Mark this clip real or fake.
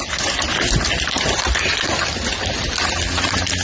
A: real